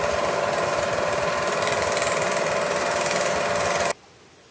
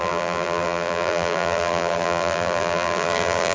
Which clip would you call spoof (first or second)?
second